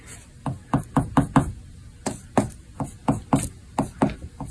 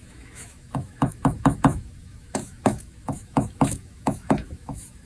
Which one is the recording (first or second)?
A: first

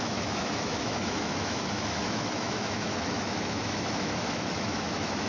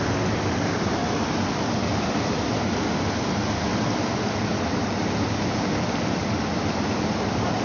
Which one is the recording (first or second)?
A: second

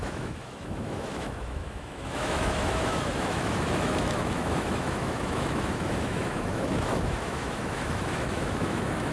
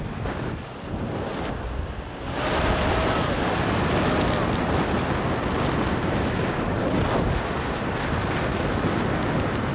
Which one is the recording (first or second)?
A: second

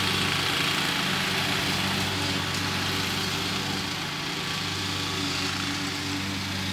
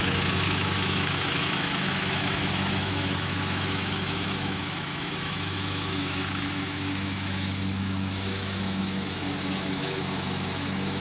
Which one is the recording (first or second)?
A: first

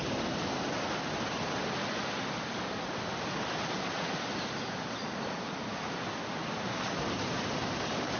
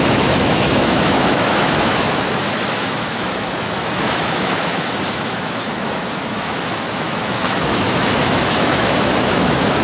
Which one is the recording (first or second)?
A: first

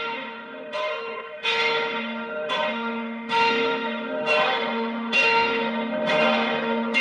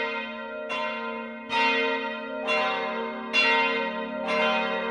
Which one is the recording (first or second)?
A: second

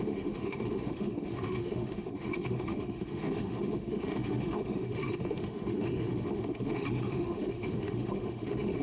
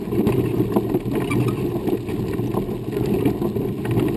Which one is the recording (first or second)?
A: second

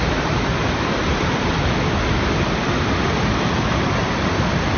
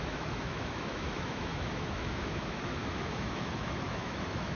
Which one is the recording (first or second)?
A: first